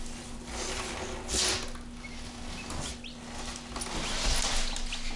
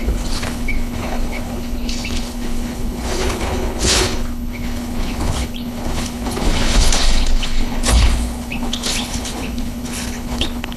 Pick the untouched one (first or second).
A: first